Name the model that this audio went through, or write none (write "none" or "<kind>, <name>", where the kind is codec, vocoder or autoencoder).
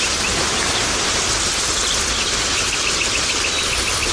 none